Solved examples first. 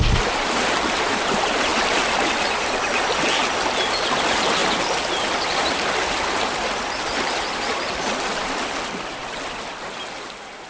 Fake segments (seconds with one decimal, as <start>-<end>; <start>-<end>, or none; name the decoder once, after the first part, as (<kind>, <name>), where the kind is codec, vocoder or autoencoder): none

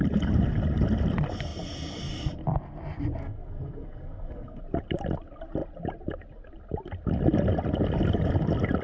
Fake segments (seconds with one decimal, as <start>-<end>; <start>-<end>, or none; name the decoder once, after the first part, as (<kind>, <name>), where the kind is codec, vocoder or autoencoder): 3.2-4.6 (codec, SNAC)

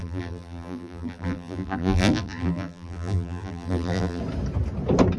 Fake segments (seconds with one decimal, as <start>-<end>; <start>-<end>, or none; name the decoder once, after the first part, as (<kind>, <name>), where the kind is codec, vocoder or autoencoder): 0.0-4.2 (vocoder, BigVGAN v2)